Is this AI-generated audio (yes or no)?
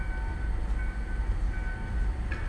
no